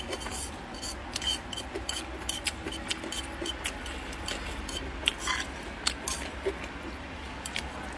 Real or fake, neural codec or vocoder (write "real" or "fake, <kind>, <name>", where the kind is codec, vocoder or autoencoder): real